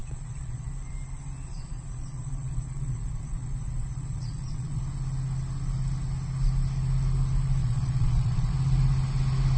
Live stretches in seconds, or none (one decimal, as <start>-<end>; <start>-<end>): 0.7-1.5; 4.8-7.6; 8.5-9.6